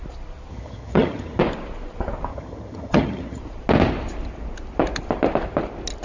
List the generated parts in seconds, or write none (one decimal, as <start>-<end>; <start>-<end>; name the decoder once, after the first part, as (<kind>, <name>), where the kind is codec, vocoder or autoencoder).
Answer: 0.5-1.4 (vocoder, HiFi-GAN); 2.3-3.4